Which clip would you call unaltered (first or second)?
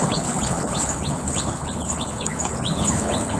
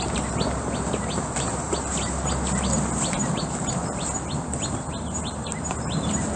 second